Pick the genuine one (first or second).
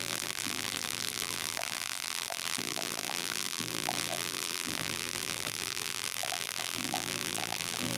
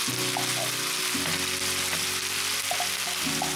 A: second